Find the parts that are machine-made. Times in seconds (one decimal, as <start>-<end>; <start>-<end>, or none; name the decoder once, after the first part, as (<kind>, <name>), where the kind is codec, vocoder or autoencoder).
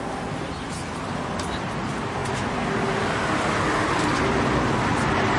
4.9-5.4 (vocoder, BigVGAN v2)